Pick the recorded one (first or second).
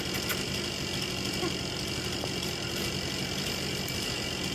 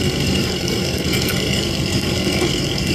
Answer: first